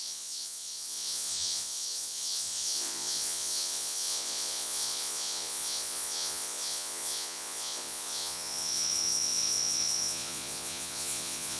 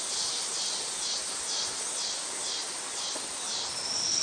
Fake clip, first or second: first